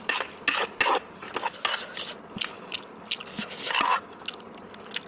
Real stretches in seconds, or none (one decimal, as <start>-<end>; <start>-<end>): 0.0-5.1